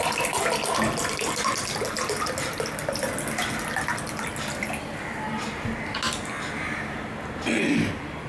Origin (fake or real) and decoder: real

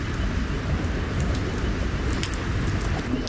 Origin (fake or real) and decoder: real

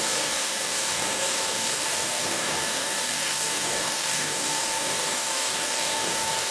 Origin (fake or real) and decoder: fake, codec, DAC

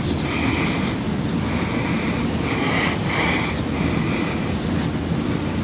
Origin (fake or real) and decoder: real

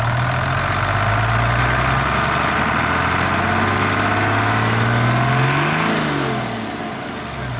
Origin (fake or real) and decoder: real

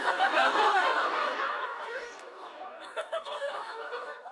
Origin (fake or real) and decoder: fake, codec, DAC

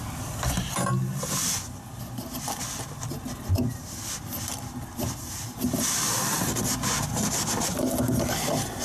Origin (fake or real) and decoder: real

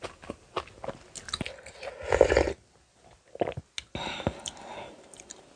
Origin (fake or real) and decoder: real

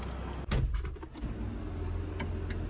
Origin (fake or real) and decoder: real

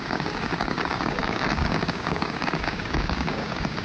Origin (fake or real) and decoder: fake, codec, DAC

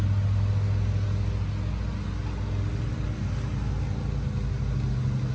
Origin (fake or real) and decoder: real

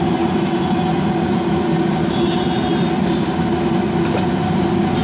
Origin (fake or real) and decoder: real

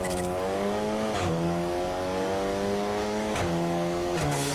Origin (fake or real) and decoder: fake, codec, DAC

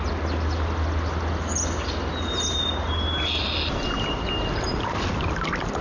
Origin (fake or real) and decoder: real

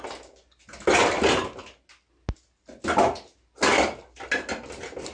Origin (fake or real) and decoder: real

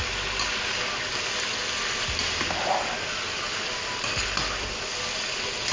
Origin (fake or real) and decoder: real